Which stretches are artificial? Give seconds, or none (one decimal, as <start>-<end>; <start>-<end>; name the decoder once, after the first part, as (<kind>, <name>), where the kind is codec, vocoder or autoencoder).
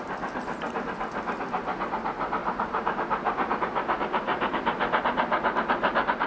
2.4-3.6 (vocoder, BigVGAN v2); 4.3-6.3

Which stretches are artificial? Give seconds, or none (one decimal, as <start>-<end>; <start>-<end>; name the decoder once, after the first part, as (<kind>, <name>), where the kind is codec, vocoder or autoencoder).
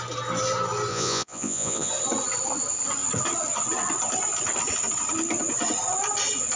0.9-1.9 (vocoder, Vocos)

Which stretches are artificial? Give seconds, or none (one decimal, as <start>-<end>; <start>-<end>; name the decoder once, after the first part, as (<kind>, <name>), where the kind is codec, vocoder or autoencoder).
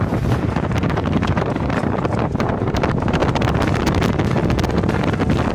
0.0-3.2 (vocoder, BigVGAN v2)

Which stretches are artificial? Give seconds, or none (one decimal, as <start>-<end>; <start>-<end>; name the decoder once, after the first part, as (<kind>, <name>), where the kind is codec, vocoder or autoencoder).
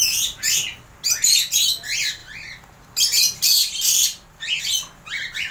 none